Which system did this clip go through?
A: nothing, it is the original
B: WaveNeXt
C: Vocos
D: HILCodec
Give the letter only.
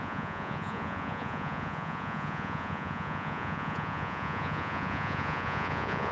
C